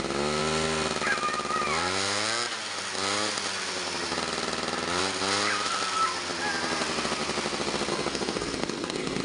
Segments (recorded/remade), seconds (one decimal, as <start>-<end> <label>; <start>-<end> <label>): 0.0-7.9 recorded; 7.9-9.2 remade